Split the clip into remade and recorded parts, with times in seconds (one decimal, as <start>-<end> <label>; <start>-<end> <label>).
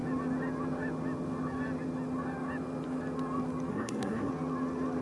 0.0-3.7 recorded; 3.7-4.3 remade; 4.3-5.0 recorded